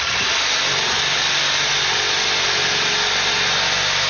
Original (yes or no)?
yes